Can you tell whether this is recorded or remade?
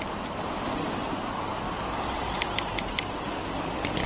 recorded